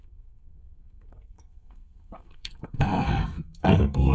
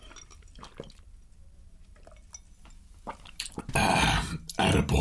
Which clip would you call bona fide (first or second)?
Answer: second